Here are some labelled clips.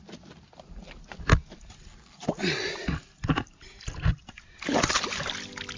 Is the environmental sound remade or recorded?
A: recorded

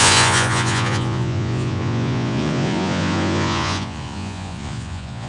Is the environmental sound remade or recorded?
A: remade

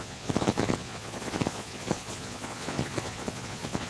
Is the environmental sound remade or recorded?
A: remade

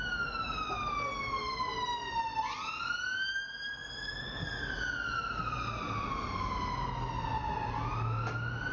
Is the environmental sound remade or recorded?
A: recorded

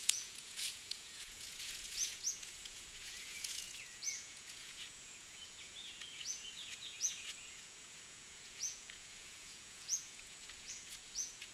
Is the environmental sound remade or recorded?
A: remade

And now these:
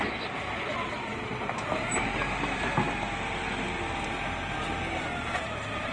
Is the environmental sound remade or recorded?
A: recorded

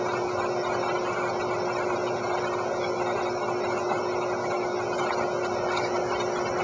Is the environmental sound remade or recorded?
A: recorded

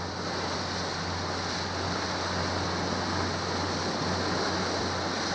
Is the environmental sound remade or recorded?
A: recorded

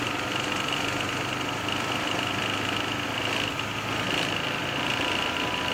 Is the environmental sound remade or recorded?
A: recorded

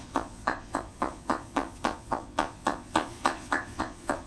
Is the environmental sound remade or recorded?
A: remade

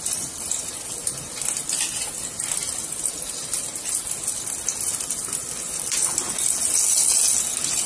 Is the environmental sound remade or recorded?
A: recorded